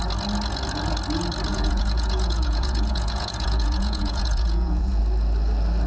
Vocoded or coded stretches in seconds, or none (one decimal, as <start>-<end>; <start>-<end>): 1.5-5.0